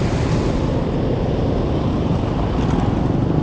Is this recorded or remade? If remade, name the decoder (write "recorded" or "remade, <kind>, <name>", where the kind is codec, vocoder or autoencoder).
recorded